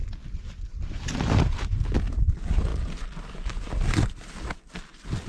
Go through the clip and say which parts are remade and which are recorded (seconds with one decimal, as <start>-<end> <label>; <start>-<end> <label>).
0.0-5.3 recorded